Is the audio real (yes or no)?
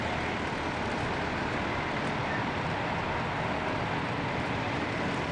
yes